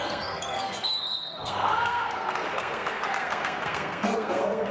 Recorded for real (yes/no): no